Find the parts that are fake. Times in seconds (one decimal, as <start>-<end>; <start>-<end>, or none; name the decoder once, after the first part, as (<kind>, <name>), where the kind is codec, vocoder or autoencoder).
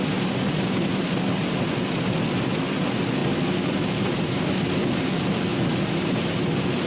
none